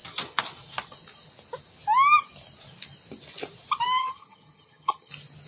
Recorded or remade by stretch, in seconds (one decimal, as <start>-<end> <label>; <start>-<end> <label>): 0.0-4.0 recorded; 4.0-5.1 remade; 5.1-5.5 recorded